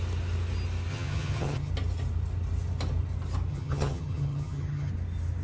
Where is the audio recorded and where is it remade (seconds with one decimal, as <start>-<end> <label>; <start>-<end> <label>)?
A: 0.0-0.9 recorded; 0.9-1.7 remade; 1.7-3.5 recorded; 3.5-4.9 remade; 4.9-5.4 recorded